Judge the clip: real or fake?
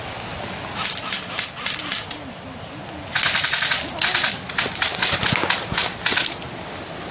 real